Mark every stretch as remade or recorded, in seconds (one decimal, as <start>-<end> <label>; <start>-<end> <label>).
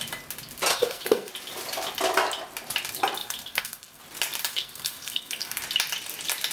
0.0-0.7 recorded; 0.7-1.3 remade; 1.3-3.2 recorded; 3.2-4.0 remade; 4.0-4.5 recorded; 4.5-5.6 remade; 5.6-6.5 recorded